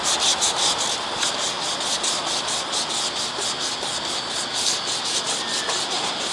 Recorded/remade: recorded